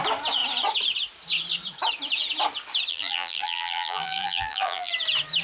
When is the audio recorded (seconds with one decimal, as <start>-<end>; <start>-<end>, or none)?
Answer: 0.0-2.9; 4.9-5.4